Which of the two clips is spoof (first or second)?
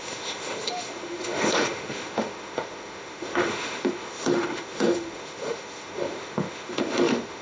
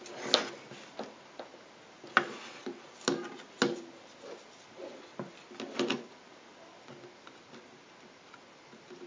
first